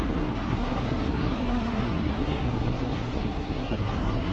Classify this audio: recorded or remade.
remade